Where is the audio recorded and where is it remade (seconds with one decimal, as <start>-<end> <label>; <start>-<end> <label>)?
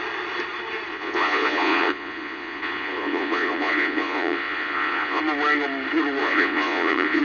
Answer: 0.0-0.9 recorded; 0.9-5.2 remade; 5.2-6.2 recorded; 6.2-7.2 remade